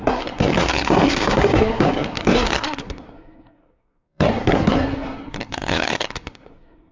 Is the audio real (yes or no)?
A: no